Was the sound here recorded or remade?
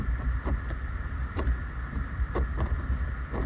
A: recorded